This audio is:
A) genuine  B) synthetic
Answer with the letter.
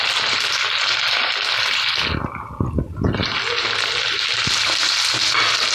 A